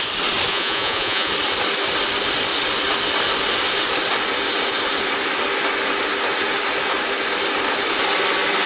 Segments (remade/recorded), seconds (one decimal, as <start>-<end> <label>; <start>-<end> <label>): 0.0-0.5 recorded; 0.5-1.3 remade; 1.3-8.7 recorded